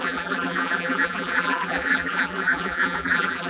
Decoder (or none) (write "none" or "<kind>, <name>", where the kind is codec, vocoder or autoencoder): vocoder, BigVGAN v2